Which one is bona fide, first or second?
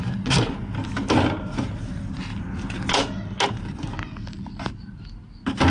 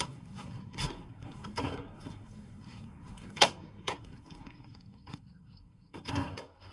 first